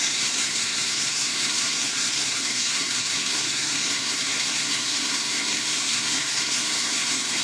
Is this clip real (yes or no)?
no